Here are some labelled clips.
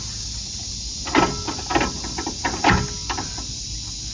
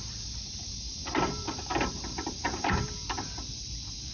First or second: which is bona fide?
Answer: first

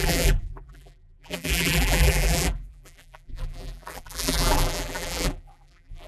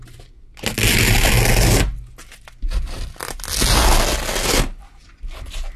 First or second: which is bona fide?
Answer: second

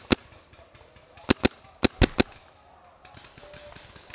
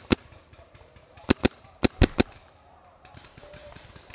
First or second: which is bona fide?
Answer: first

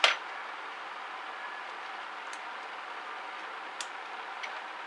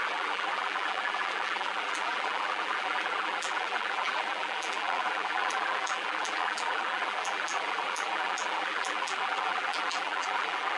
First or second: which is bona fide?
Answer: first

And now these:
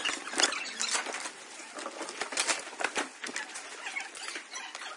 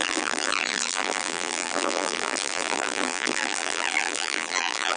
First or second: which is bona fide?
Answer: first